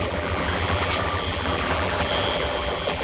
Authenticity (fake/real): fake